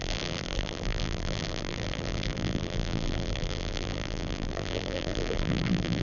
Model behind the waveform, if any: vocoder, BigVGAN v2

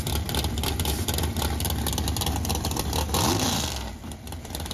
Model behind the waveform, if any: vocoder, BigVGAN v2